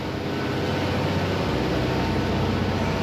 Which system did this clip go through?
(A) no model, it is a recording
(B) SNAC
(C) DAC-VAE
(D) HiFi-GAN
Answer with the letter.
A